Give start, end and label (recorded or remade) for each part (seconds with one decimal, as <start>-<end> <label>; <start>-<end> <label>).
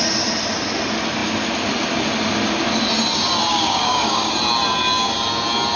0.0-3.5 recorded; 3.5-4.3 remade; 4.3-5.8 recorded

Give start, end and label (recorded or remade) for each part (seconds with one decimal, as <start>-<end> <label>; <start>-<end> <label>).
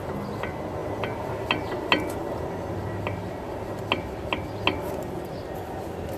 0.0-0.8 recorded; 0.8-1.9 remade; 1.9-6.2 recorded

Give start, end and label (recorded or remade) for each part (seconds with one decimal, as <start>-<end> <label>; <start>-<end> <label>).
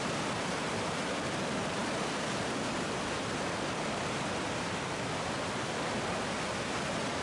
0.0-7.2 recorded